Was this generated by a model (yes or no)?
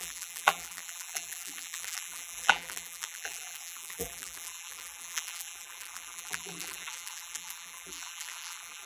yes